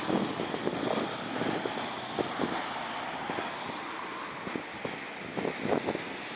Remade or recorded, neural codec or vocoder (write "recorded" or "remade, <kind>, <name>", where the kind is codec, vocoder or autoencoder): recorded